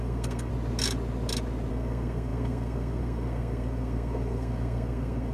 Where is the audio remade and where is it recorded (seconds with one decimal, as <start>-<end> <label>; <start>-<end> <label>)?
0.0-0.5 remade; 0.5-1.7 recorded; 1.7-5.3 remade